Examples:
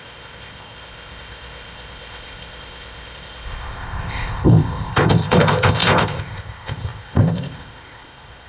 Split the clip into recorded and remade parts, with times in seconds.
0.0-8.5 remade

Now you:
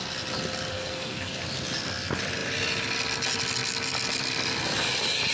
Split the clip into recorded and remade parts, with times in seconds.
0.0-0.7 recorded; 0.7-1.3 remade; 1.3-5.3 recorded

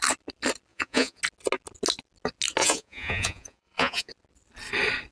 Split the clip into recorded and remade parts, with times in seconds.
0.0-0.7 recorded; 0.7-1.2 remade; 1.2-2.6 recorded; 2.6-4.1 remade; 4.1-5.1 recorded

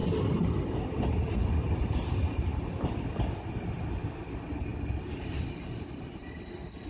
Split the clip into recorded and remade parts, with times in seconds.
0.0-6.9 recorded

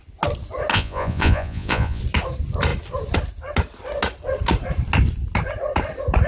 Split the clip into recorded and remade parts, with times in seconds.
0.0-0.7 recorded; 0.7-2.0 remade; 2.0-6.3 recorded

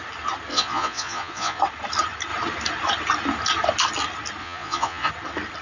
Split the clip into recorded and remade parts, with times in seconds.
0.0-0.5 recorded; 0.5-1.6 remade; 1.6-4.4 recorded; 4.4-5.1 remade; 5.1-5.6 recorded

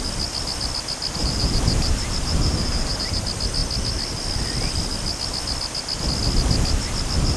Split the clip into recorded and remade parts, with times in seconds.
0.0-1.2 recorded; 1.2-3.2 remade; 3.2-7.4 recorded